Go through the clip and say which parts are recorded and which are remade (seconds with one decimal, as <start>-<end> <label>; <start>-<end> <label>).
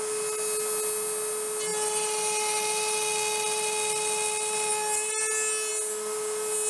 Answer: 0.0-6.7 recorded